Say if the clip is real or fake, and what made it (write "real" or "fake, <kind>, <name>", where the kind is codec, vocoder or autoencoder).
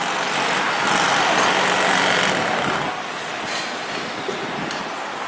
real